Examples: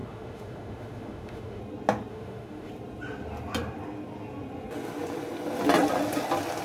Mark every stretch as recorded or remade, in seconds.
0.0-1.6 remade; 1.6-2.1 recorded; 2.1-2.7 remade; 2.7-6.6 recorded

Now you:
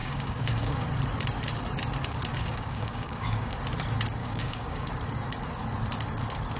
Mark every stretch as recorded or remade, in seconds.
0.0-0.9 remade; 0.9-2.3 recorded; 2.3-3.6 remade; 3.6-4.2 recorded; 4.2-4.9 remade; 4.9-6.6 recorded

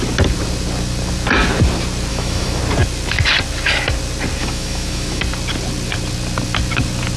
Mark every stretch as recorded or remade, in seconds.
0.0-2.1 recorded; 2.1-2.6 remade; 2.6-4.4 recorded; 4.4-5.2 remade; 5.2-7.2 recorded

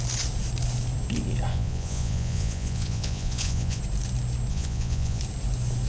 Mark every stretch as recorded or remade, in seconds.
0.0-1.5 recorded; 1.5-3.8 remade; 3.8-4.5 recorded; 4.5-5.2 remade; 5.2-5.9 recorded

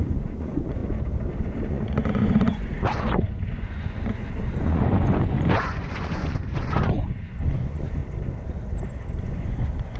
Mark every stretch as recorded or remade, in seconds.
0.0-0.8 remade; 0.8-1.4 recorded; 1.4-8.0 remade; 8.0-9.2 recorded; 9.2-10.0 remade

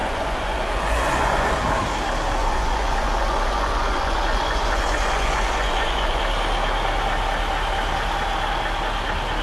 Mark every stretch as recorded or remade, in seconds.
0.0-1.6 remade; 1.6-2.4 recorded; 2.4-6.2 remade; 6.2-9.4 recorded

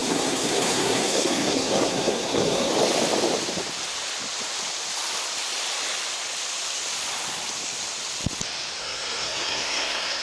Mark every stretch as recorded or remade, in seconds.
0.0-2.7 remade; 2.7-8.8 recorded; 8.8-10.2 remade

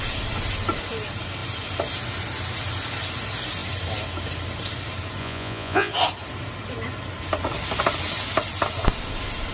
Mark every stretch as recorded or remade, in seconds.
0.0-5.2 recorded; 5.2-5.9 remade; 5.9-9.5 recorded